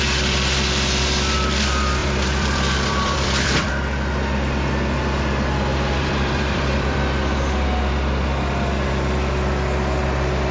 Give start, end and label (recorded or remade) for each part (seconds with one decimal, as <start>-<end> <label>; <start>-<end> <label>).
0.0-2.0 recorded; 2.0-3.7 remade; 3.7-5.7 recorded; 5.7-7.0 remade; 7.0-10.5 recorded